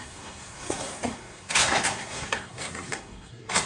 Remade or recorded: remade